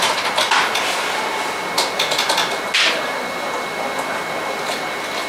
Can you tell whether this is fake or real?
real